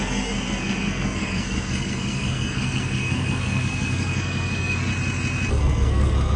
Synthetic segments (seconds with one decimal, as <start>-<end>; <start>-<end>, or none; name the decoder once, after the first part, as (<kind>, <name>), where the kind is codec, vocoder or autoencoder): 0.0-4.9 (codec, SNAC); 5.5-6.4